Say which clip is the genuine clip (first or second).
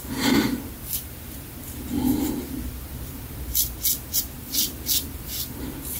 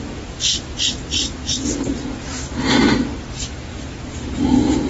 second